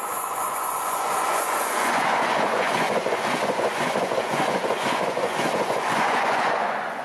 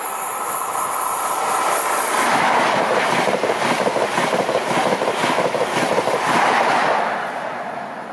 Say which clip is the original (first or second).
second